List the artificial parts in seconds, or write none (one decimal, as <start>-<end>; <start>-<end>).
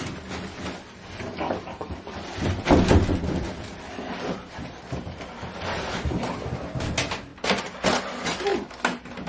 0.0-7.3; 8.0-8.5